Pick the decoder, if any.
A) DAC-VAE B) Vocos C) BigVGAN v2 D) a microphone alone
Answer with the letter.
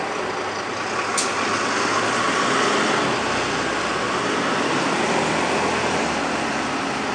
D